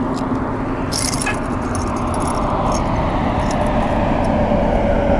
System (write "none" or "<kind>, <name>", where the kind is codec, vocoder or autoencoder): none